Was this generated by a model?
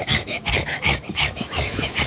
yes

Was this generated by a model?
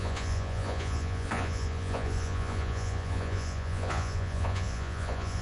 yes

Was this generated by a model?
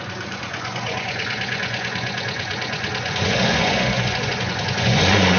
yes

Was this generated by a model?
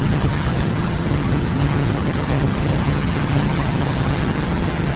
yes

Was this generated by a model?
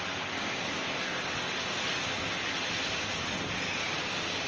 no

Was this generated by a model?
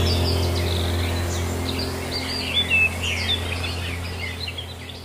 no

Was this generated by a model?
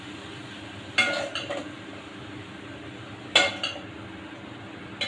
no